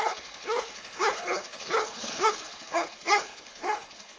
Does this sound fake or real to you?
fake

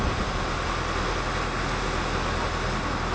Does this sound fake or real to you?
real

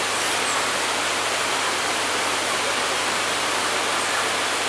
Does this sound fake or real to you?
real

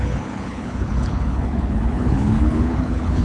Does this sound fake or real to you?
fake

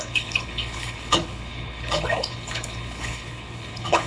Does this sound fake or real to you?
fake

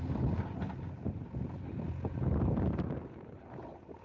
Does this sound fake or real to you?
real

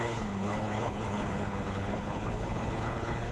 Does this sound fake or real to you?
fake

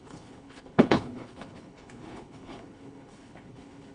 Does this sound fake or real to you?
fake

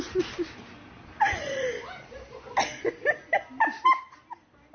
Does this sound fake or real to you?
real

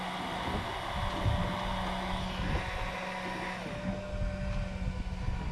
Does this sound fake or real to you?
real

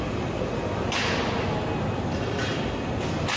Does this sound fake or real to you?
real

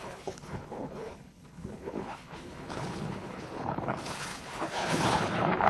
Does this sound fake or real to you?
fake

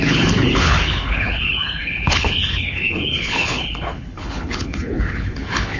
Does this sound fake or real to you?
fake